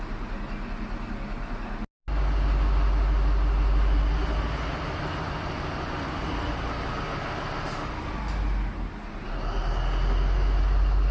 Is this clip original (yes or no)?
yes